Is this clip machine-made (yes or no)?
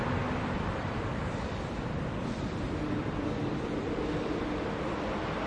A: yes